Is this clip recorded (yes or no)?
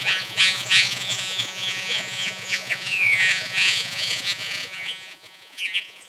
no